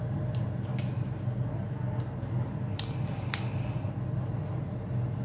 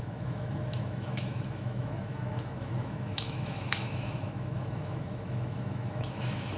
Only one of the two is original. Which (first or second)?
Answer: first